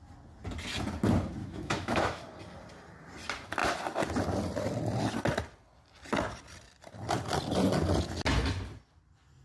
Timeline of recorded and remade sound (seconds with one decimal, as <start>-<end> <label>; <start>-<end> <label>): 0.0-1.4 recorded; 1.4-2.2 remade; 2.2-9.4 recorded